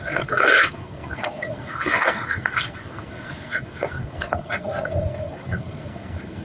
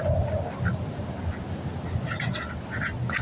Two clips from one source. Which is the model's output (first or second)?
first